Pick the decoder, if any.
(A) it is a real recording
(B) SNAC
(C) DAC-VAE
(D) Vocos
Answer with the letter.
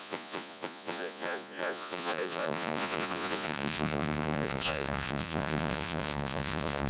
D